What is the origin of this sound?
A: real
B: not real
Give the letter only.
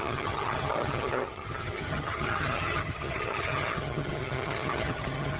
B